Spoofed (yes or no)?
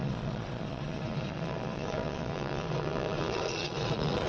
yes